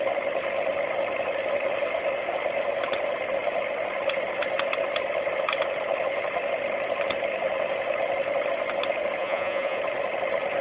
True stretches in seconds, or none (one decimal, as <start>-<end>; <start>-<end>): 0.0-9.2; 9.8-10.6